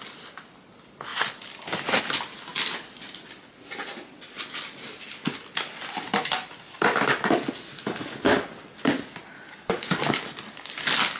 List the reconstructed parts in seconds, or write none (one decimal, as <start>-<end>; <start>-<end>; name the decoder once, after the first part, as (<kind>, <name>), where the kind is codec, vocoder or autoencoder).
none